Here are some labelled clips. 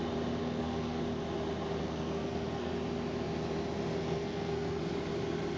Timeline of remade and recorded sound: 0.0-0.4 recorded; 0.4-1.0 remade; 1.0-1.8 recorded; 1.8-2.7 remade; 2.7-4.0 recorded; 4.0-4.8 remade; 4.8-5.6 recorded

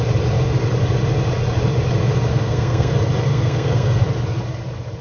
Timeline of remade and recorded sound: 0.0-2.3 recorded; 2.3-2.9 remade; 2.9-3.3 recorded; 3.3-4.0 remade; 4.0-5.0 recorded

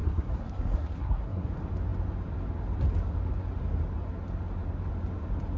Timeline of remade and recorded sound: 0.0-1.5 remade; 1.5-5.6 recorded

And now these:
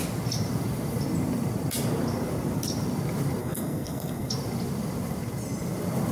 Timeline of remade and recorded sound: 0.0-3.4 recorded; 3.4-4.3 remade; 4.3-6.1 recorded